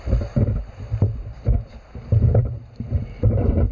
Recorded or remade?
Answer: remade